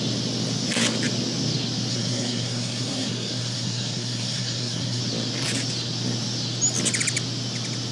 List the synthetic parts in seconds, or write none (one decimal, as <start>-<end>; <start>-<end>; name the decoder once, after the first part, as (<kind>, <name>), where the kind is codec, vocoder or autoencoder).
1.9-5.0 (codec, SNAC)